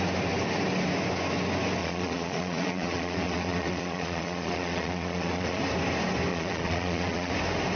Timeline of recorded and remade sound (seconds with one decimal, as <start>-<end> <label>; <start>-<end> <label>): 0.0-1.8 recorded; 1.8-5.6 remade; 5.6-6.3 recorded; 6.3-7.3 remade; 7.3-7.8 recorded